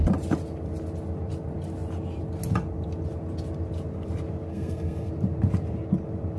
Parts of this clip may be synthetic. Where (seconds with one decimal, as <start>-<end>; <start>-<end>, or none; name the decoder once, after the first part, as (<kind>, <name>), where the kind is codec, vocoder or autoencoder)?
4.5-5.1 (codec, SNAC)

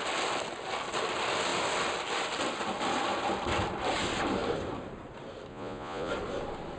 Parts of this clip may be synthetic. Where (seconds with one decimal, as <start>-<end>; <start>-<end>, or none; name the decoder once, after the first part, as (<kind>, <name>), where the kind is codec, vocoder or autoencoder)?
5.5-6.1 (vocoder, Vocos)

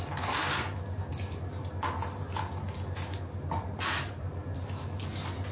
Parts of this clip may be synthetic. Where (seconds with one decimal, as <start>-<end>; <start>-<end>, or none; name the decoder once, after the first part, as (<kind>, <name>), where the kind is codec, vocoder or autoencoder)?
1.1-1.7 (vocoder, BigVGAN v2)

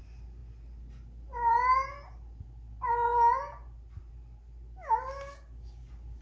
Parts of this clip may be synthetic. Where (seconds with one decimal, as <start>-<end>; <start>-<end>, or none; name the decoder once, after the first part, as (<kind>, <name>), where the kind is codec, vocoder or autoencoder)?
none

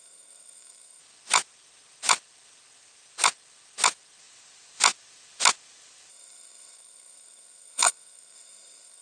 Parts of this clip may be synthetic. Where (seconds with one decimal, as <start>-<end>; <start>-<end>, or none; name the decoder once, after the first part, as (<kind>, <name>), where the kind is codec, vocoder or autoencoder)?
0.0-1.0 (codec, SNAC); 6.1-9.0

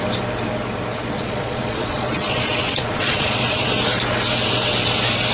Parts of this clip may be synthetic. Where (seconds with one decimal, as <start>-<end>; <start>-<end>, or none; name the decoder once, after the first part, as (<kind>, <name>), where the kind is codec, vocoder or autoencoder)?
0.9-3.7 (vocoder, Vocos)

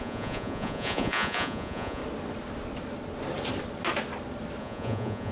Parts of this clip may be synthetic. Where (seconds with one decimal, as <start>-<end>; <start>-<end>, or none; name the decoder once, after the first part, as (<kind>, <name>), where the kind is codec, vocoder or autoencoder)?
0.0-2.0 (vocoder, Vocos); 4.6-5.3

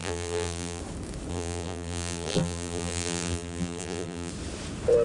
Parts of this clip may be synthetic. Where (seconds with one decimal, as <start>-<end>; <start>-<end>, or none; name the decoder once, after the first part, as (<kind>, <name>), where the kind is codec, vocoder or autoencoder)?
0.0-0.8 (vocoder, BigVGAN v2); 1.3-4.3